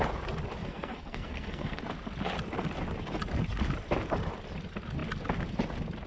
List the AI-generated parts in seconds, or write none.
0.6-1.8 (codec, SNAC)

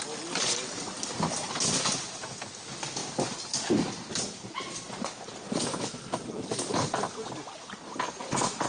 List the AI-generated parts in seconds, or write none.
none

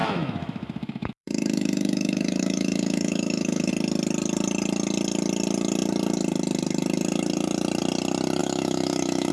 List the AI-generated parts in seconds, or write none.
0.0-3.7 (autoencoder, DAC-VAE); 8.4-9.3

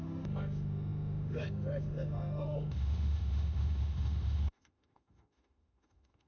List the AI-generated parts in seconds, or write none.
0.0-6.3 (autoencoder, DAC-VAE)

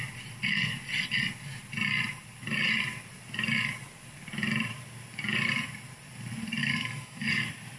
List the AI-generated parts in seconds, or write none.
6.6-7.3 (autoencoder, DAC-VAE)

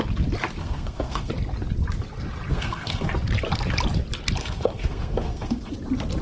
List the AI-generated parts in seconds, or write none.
0.6-1.3 (codec, SNAC); 2.5-3.1; 4.4-5.7